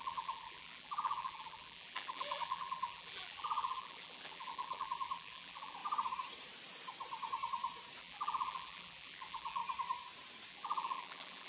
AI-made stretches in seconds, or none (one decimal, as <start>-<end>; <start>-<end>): 0.0-5.8; 8.0-9.6; 10.5-11.5